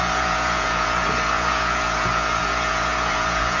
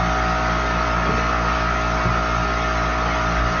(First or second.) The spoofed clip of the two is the first